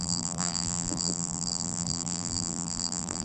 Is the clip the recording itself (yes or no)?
no